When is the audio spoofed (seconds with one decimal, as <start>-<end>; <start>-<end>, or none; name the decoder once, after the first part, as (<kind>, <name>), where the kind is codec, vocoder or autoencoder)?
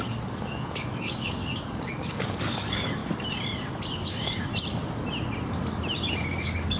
0.0-3.0 (codec, DAC); 3.9-4.5; 6.3-6.8